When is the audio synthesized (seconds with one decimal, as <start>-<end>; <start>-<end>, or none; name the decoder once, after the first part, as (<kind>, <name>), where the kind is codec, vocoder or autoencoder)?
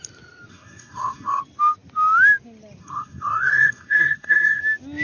0.5-1.4 (codec, SNAC); 2.8-4.6